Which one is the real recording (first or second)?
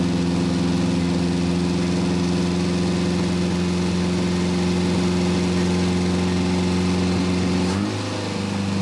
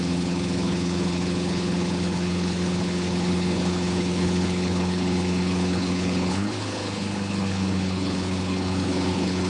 first